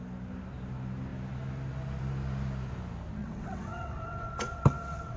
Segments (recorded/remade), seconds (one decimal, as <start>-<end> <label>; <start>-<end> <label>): 0.0-3.2 recorded; 3.2-5.2 remade